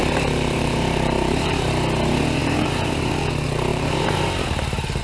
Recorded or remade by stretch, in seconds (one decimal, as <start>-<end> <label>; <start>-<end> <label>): 0.0-1.7 remade; 1.7-2.4 recorded; 2.4-3.1 remade; 3.1-3.7 recorded; 3.7-5.0 remade